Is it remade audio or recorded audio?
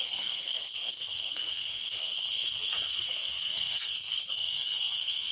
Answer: remade